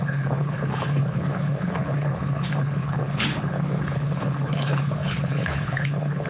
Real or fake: fake